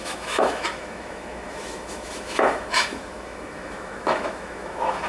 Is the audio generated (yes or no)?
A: yes